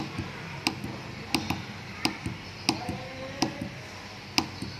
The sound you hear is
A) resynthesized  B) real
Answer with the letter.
B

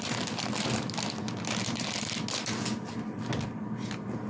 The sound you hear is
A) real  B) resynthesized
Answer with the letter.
A